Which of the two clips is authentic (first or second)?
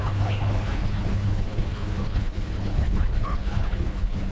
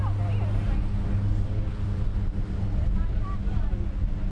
second